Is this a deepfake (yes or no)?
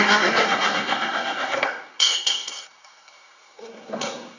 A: yes